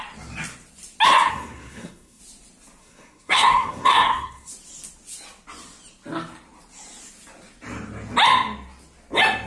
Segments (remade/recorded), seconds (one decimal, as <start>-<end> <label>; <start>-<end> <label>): 0.0-1.3 recorded; 1.3-2.2 remade; 2.2-2.8 recorded; 2.8-4.5 remade; 4.5-9.5 recorded